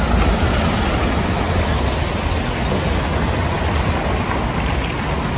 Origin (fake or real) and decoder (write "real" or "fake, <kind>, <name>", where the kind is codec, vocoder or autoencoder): real